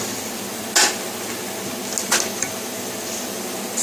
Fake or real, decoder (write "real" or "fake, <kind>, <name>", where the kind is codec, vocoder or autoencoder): real